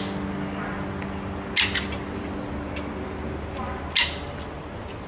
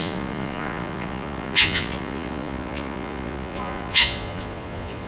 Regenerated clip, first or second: second